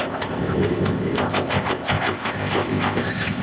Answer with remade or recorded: remade